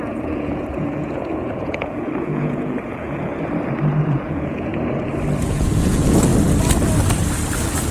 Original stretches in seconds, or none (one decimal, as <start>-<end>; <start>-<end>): 3.3-4.0; 4.7-5.4; 6.3-7.9